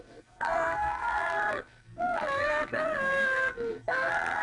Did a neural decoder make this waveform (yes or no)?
yes